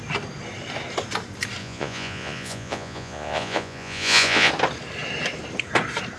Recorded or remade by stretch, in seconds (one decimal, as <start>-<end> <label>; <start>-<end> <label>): 0.0-1.6 recorded; 1.6-4.5 remade; 4.5-6.2 recorded